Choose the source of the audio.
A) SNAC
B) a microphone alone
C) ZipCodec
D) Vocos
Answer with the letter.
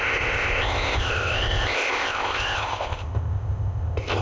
C